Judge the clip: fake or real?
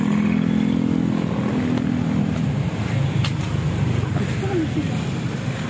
real